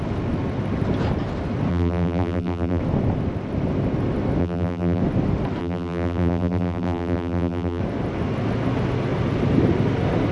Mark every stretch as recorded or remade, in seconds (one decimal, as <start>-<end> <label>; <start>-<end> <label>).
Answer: 0.0-1.7 recorded; 1.7-2.8 remade; 2.8-4.4 recorded; 4.4-5.0 remade; 5.0-5.6 recorded; 5.6-7.8 remade; 7.8-10.3 recorded